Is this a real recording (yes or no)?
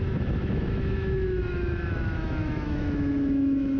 no